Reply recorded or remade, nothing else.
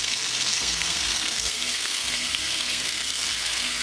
remade